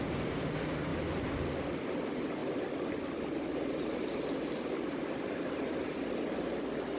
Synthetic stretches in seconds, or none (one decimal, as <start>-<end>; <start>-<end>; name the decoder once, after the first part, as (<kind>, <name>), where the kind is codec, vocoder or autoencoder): 0.9-2.0 (vocoder, BigVGAN v2)